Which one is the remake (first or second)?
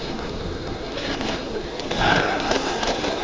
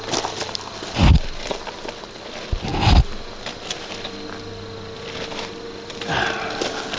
first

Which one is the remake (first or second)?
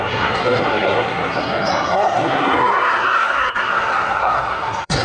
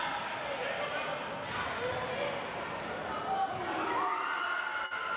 first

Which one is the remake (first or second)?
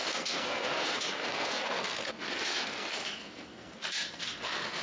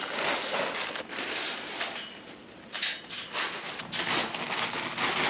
first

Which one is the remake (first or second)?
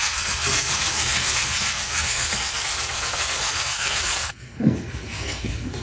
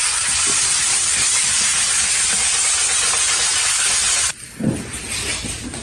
first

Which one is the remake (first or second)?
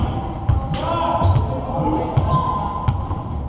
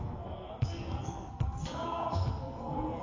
second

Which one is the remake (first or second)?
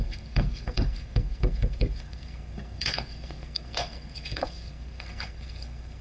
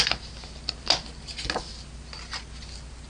first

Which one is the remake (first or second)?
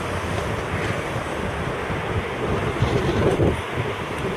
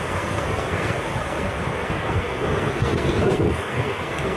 second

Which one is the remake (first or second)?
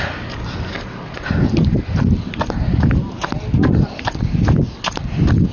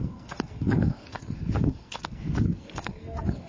second